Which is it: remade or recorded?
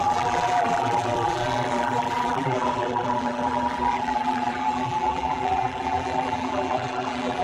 remade